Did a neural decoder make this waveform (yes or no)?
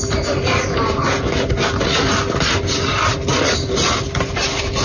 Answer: no